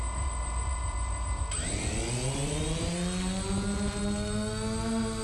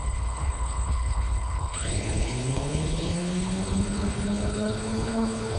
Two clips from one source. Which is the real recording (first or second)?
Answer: first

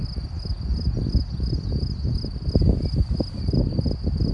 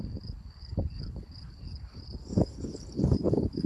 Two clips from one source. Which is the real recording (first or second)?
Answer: first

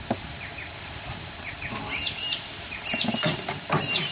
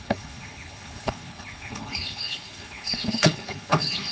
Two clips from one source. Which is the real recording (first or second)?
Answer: first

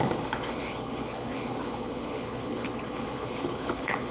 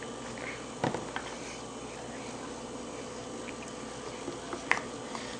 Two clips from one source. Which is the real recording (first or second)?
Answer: second